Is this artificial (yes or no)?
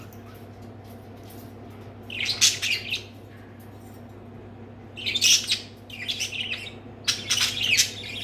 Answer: no